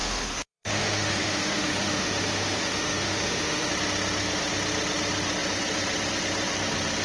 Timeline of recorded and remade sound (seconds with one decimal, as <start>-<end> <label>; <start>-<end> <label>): 0.0-3.7 remade; 3.7-7.0 recorded